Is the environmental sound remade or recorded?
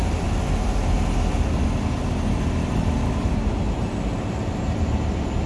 recorded